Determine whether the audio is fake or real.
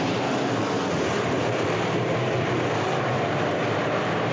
fake